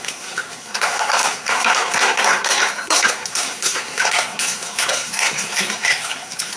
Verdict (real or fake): fake